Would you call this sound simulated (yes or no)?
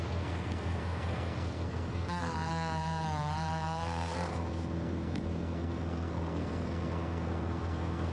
yes